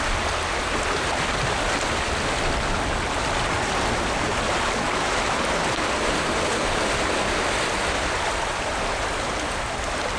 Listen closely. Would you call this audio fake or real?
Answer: real